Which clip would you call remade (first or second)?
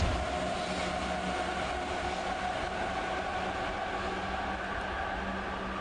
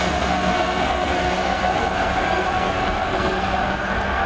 second